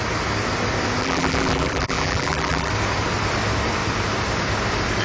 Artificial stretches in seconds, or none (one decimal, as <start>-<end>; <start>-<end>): 1.0-2.7

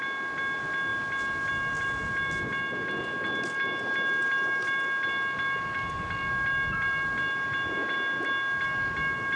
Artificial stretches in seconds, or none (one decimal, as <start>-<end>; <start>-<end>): none

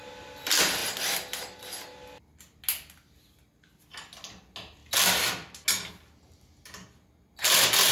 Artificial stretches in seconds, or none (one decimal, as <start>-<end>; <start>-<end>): none

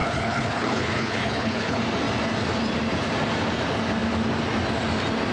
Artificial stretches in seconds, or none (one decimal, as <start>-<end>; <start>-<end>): 0.0-1.8

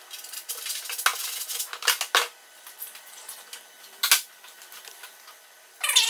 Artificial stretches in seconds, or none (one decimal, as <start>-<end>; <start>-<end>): none

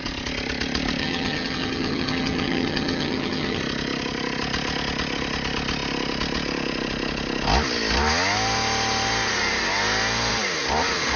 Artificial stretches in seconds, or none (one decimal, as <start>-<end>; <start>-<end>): 1.0-3.6

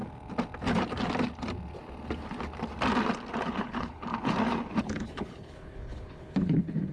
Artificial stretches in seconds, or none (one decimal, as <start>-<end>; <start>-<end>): 3.6-4.1; 4.8-6.9

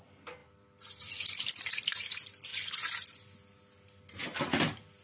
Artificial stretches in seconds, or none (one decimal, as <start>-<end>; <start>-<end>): 0.4-1.8